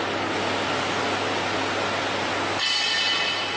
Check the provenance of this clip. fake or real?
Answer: real